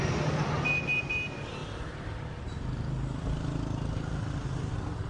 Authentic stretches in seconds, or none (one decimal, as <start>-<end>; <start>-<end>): 0.0-1.6; 2.4-5.1

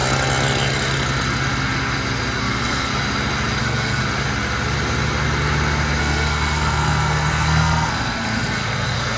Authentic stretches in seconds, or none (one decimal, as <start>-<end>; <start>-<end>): 0.0-2.4; 2.9-3.6; 4.0-6.0

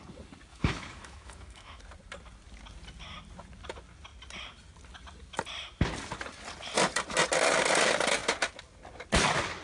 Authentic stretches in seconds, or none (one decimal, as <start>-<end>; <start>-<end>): 0.0-0.5; 1.8-9.6

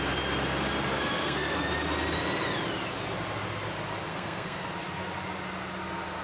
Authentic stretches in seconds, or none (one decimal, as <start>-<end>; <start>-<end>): 0.0-0.9; 1.5-4.1; 4.7-6.2